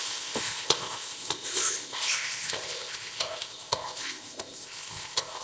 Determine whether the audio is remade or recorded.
remade